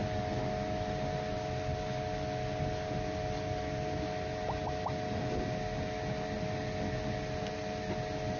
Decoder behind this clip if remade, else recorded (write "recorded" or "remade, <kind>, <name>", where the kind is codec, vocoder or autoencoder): recorded